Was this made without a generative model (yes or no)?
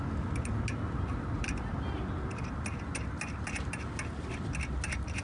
yes